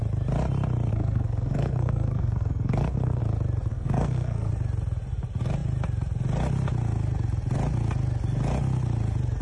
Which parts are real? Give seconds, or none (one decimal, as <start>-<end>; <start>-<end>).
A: 0.0-0.9; 3.2-3.7; 4.5-9.4